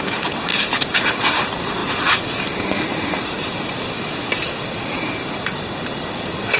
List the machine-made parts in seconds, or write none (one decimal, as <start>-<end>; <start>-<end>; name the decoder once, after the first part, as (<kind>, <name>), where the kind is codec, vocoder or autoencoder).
none